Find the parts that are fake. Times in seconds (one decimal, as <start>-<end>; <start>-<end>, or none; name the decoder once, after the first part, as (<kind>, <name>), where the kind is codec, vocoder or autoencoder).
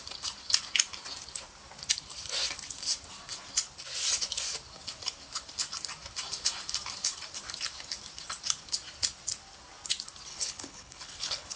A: 10.3-11.6 (codec, HILCodec)